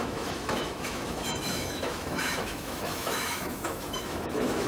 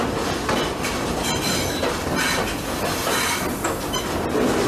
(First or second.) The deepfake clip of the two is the first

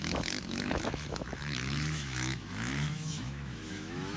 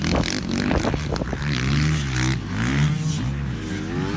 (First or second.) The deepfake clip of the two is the first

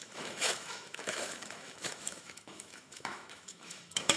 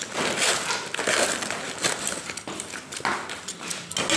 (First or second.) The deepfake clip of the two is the first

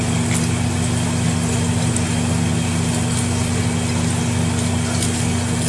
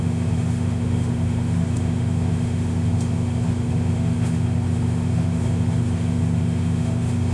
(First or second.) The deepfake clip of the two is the second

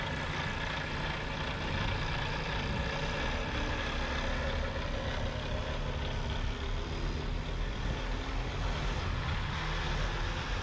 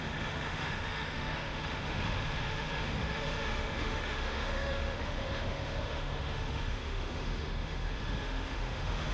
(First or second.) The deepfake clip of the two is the second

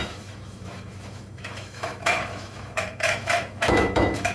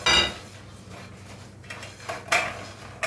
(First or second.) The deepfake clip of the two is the first